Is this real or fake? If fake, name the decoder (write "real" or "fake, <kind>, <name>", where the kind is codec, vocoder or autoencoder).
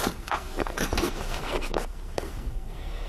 fake, codec, SNAC